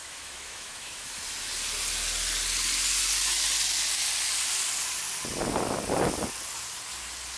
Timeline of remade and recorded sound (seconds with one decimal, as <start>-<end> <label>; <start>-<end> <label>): 0.0-1.2 remade; 1.2-7.4 recorded